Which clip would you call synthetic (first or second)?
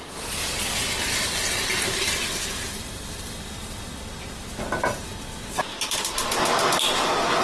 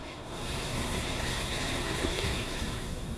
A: second